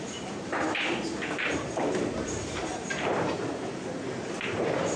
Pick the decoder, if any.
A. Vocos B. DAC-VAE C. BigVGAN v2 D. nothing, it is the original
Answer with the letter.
C